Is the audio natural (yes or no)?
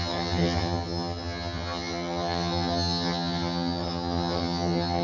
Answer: no